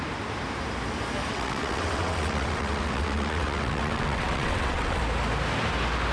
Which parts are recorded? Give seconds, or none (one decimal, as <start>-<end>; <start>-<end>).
0.0-1.3; 5.0-6.1